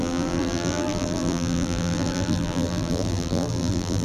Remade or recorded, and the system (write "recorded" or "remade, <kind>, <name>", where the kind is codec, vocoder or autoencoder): remade, vocoder, BigVGAN v2